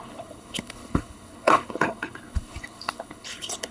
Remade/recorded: remade